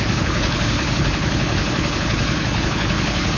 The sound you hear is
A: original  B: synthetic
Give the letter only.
B